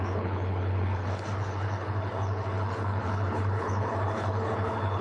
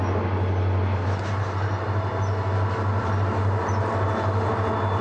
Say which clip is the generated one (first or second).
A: first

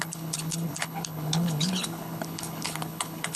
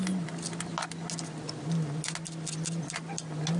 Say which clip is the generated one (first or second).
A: first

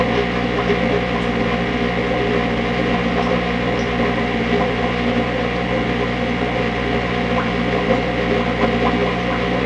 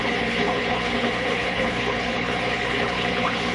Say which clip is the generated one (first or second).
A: second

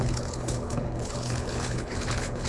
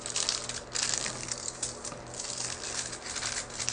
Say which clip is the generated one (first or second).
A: first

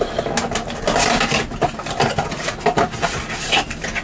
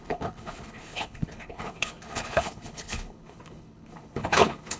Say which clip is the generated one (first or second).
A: second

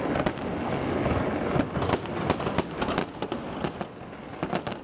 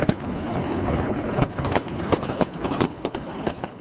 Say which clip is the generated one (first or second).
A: second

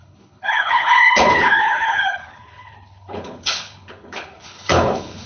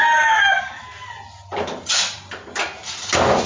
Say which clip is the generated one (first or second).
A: first